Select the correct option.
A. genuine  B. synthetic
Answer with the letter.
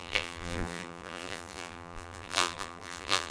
B